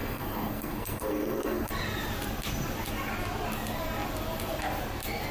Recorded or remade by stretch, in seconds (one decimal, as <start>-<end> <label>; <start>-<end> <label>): 0.0-1.7 remade; 1.7-5.3 recorded